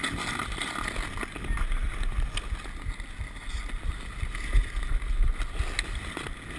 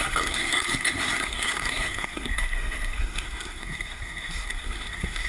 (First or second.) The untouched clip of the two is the first